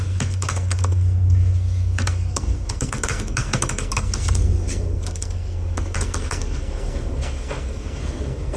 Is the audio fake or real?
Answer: fake